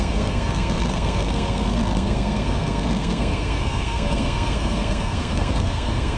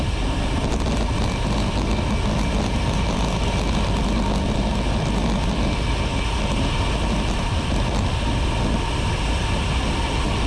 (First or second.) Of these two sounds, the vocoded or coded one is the first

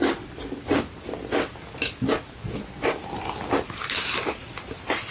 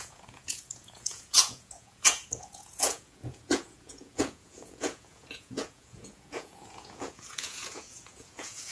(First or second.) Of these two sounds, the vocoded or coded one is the second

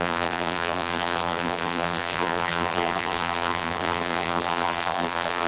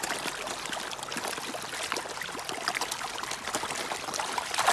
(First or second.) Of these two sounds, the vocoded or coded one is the first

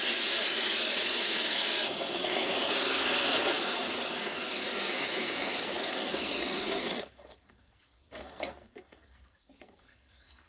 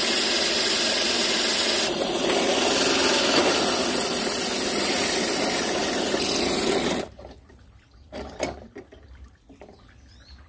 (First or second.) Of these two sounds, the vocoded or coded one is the first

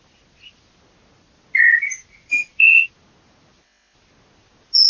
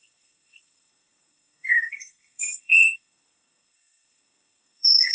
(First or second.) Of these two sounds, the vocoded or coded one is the second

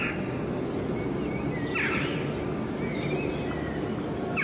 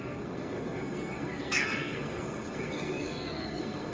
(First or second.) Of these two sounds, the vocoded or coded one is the second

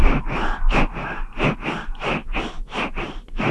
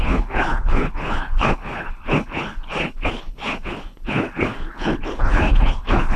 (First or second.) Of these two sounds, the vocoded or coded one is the second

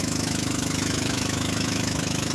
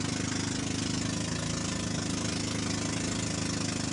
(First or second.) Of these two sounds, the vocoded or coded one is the first